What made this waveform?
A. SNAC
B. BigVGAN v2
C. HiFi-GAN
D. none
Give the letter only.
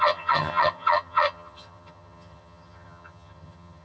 C